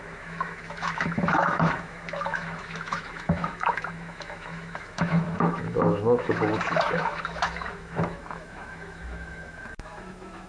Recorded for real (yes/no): no